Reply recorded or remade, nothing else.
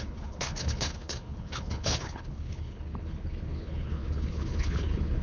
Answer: remade